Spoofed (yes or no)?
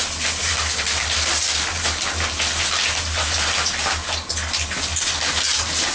no